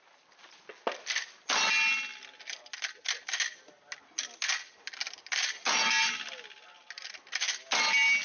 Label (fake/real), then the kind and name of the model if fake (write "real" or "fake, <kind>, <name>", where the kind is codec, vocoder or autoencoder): real